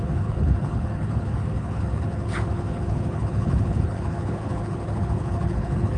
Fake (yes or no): yes